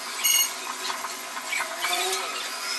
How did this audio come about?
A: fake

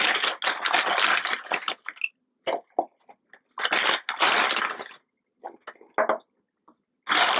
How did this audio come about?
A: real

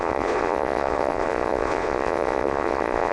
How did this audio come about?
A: fake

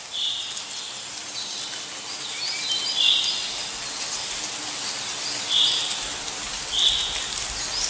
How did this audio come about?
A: real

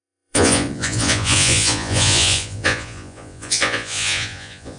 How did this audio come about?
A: fake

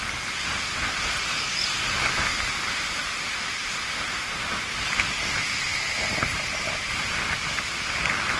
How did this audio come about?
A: real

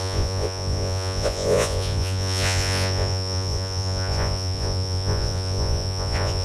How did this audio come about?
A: fake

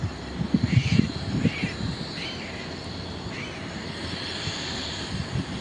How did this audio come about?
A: real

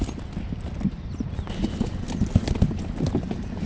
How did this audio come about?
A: real